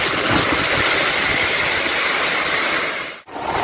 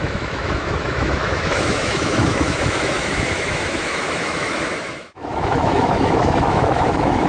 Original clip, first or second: first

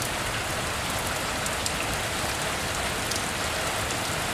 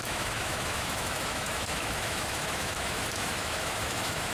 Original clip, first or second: first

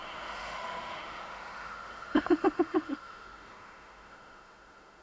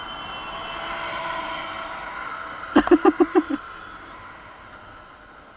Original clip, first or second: second